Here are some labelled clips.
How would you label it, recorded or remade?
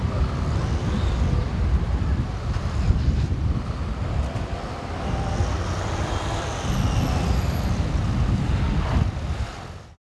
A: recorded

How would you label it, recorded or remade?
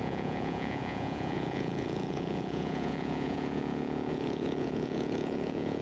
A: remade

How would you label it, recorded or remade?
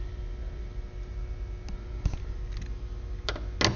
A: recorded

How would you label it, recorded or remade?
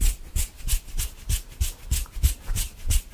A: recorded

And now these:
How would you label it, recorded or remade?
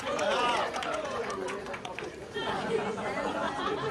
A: remade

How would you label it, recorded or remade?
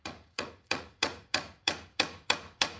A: remade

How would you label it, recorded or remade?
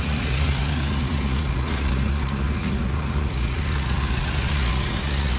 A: remade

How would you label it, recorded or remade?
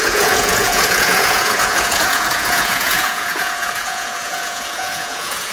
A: remade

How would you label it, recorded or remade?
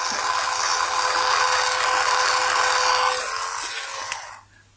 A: recorded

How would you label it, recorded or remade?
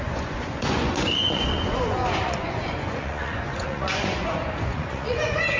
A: remade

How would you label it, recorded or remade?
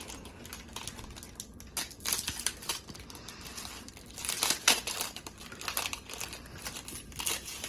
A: recorded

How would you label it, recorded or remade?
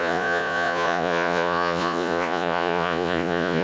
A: remade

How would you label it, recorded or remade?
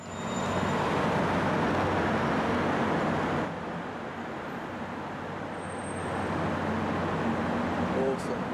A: recorded